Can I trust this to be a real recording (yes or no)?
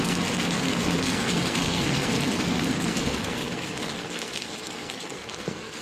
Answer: no